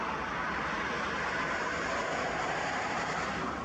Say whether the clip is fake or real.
real